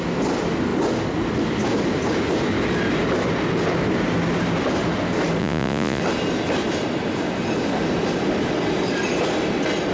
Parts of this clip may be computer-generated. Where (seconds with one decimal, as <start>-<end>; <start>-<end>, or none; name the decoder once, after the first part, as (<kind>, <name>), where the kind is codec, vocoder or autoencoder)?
5.4-6.0 (vocoder, Vocos)